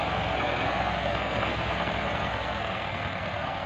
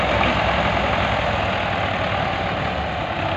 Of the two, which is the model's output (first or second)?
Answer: first